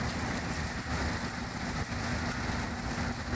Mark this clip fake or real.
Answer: real